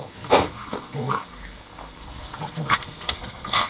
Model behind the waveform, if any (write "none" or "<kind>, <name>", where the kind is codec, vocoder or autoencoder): codec, SNAC